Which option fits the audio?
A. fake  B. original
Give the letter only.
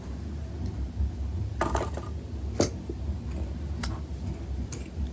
B